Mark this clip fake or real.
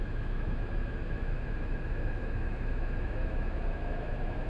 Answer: fake